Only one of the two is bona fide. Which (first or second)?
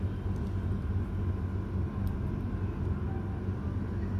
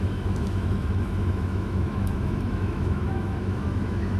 first